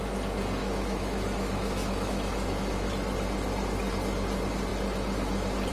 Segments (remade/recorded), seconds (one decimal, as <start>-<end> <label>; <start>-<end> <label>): 0.0-0.6 recorded; 0.6-2.9 remade; 2.9-5.7 recorded